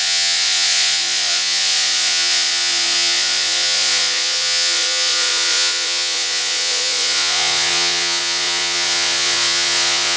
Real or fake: fake